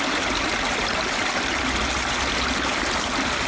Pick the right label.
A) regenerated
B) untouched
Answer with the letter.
B